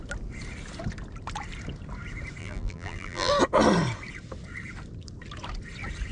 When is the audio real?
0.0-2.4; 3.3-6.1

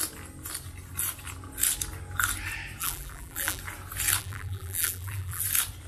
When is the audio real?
0.0-2.8; 3.6-4.2; 5.4-5.9

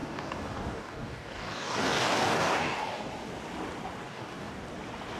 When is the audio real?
3.1-4.0; 4.5-5.2

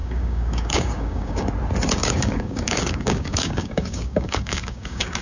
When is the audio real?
1.5-2.0

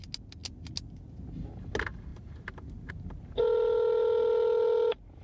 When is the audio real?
0.0-2.1; 2.9-5.2

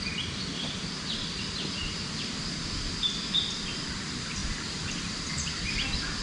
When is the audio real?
0.0-6.2